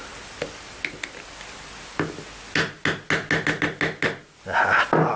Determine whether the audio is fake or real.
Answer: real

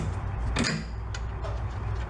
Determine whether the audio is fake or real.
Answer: real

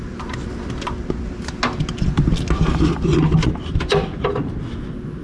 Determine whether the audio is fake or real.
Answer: real